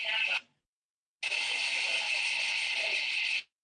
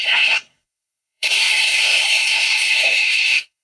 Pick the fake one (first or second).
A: second